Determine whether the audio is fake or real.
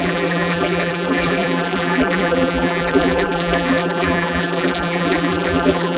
fake